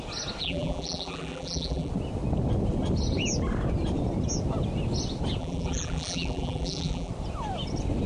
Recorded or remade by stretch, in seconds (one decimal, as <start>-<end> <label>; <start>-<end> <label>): 0.0-0.4 recorded; 0.4-1.9 remade; 1.9-5.4 recorded; 5.4-7.1 remade; 7.1-8.1 recorded